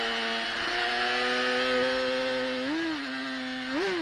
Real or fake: real